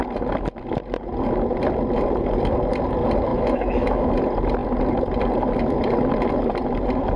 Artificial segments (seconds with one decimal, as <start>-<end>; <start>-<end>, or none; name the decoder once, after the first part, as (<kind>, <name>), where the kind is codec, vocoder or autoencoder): 3.3-4.1 (autoencoder, DAC-VAE)